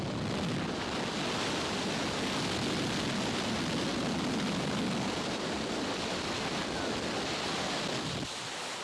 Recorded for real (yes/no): yes